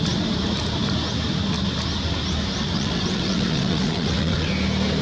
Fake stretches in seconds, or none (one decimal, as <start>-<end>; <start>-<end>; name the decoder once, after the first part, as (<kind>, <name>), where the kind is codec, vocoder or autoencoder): 2.6-4.5 (vocoder, WaveNeXt)